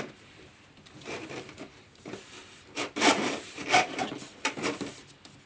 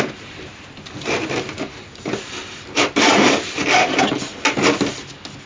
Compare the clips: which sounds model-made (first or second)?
first